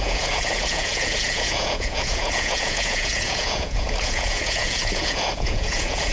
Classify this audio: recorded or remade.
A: remade